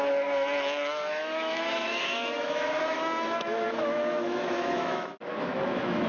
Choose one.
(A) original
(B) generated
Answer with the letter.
B